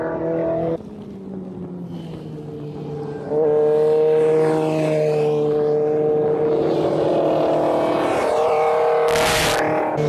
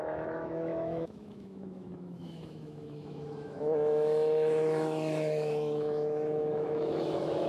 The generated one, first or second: second